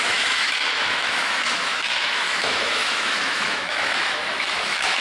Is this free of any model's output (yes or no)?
no